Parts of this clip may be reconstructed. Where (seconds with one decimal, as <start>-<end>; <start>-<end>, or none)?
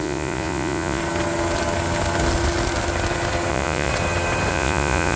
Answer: 0.0-1.0; 3.5-3.9; 4.5-5.2